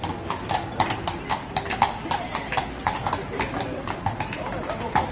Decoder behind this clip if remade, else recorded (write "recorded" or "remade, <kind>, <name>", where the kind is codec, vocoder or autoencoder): recorded